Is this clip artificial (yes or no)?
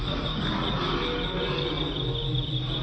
no